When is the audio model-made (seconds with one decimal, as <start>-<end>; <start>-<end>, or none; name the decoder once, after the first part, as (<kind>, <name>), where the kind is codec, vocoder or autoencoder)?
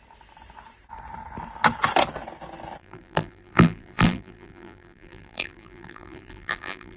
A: 2.8-7.0 (vocoder, BigVGAN v2)